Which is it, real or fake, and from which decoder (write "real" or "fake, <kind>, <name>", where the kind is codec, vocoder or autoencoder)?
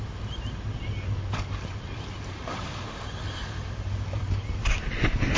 real